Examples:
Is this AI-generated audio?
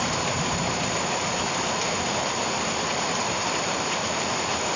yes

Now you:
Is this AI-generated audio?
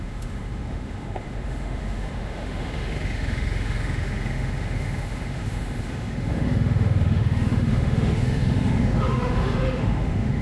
yes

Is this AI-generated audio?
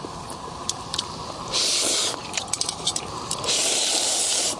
yes